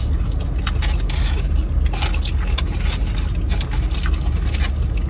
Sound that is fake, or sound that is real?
real